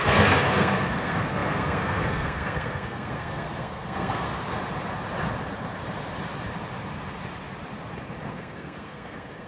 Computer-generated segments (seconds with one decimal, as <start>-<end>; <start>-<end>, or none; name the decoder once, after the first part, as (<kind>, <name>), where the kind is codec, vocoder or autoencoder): 0.0-4.3 (codec, SNAC); 8.3-9.5